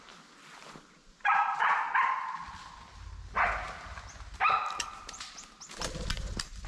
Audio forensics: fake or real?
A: real